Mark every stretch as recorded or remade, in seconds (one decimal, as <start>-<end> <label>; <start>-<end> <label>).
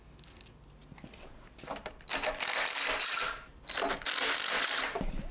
0.0-5.3 recorded